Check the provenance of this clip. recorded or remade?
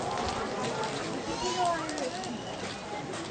recorded